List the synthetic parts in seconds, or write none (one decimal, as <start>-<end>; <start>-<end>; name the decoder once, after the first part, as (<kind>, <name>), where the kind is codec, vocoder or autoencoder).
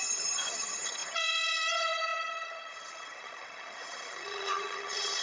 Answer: 0.0-5.2 (vocoder, HiFi-GAN)